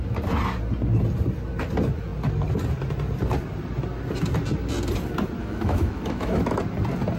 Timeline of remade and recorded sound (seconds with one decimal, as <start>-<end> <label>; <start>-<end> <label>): 0.0-5.4 recorded; 5.4-6.4 remade; 6.4-7.2 recorded